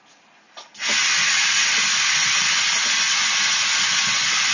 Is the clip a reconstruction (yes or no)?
no